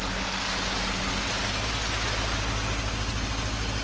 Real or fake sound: real